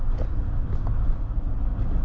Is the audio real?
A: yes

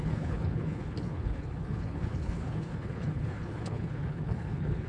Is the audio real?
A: no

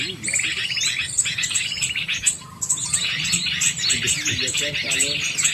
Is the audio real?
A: yes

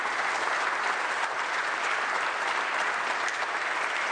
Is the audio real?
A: no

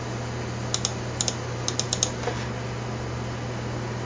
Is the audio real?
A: yes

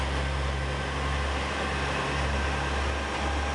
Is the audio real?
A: yes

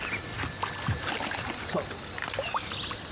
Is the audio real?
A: yes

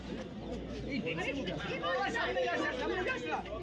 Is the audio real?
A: yes